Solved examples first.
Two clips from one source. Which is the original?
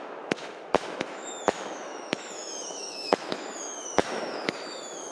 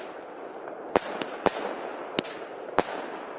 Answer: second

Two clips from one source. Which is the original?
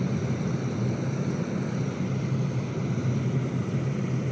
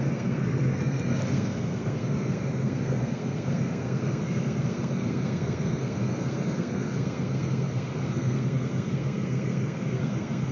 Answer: first